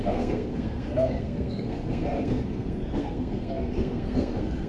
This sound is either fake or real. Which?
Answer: fake